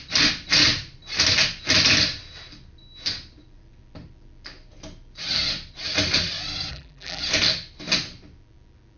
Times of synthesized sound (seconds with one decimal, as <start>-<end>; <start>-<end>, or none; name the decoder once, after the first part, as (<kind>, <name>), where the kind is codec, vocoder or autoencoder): 6.7-7.2 (vocoder, BigVGAN v2)